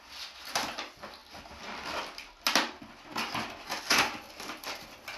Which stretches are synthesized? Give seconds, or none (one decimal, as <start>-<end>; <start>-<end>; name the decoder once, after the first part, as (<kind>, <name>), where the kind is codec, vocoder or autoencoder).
none